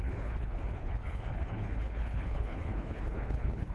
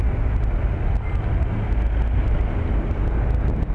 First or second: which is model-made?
first